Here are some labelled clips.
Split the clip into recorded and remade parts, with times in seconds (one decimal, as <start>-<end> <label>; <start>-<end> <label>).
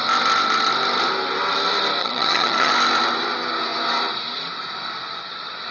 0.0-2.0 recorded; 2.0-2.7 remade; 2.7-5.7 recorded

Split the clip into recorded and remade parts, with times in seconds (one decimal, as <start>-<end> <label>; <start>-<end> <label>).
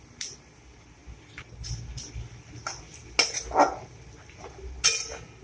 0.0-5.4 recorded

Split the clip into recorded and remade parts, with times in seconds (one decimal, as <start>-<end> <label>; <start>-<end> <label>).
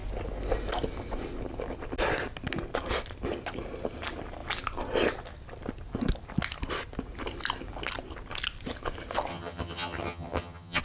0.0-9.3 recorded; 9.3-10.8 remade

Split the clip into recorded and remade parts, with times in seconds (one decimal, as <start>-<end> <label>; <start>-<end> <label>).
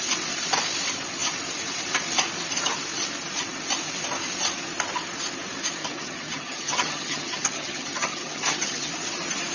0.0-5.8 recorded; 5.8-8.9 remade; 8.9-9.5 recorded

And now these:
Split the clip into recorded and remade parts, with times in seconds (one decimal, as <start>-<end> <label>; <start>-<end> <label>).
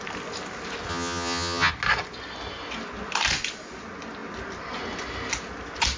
0.0-0.9 recorded; 0.9-1.7 remade; 1.7-6.0 recorded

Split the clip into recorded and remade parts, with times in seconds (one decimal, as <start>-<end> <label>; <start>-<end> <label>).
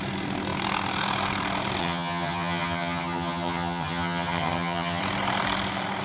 0.0-1.8 recorded; 1.8-5.0 remade; 5.0-6.0 recorded